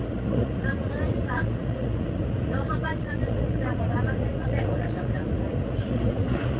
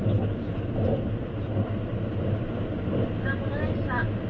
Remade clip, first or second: first